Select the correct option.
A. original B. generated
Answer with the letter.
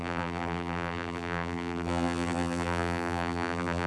B